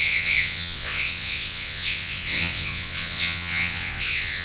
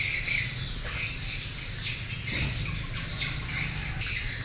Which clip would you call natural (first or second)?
second